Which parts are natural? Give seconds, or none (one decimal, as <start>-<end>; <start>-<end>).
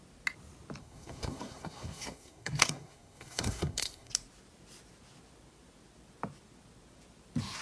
0.0-0.8; 4.1-7.6